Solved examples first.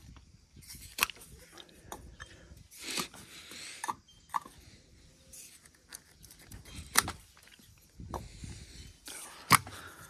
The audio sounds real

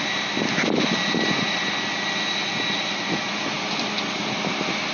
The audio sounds real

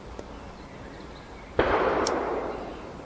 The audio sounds real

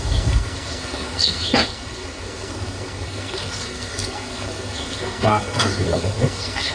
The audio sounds fake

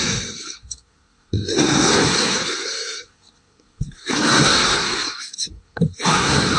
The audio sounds fake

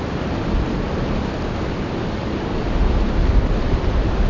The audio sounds real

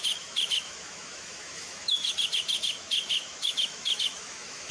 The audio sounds fake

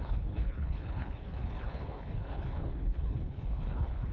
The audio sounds fake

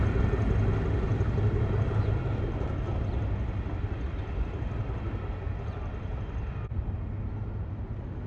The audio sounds real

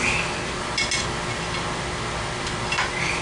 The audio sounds real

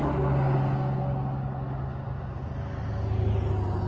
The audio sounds real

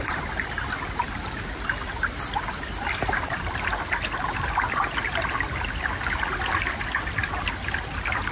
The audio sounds real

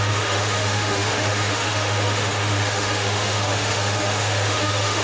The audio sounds fake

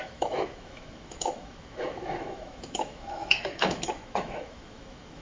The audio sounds fake